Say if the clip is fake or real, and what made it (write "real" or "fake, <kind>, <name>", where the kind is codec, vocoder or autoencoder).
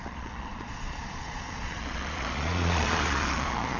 fake, vocoder, Vocos